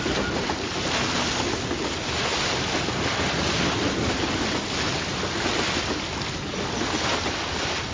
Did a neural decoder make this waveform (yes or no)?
no